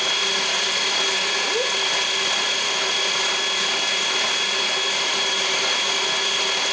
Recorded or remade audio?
recorded